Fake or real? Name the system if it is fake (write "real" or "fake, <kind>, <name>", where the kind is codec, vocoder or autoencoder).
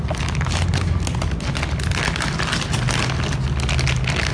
real